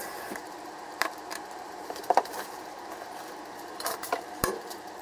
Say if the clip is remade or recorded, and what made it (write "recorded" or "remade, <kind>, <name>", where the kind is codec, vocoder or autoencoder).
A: remade, vocoder, BigVGAN v2